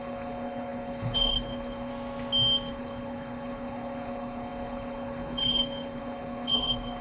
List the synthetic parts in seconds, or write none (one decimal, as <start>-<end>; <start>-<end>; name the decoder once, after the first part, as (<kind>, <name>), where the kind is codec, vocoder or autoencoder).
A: 0.0-1.9 (codec, HILCodec); 2.7-7.0